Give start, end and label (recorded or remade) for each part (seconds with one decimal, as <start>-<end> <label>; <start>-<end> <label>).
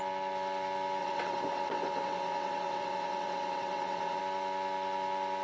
0.0-1.0 recorded; 1.0-4.2 remade; 4.2-5.4 recorded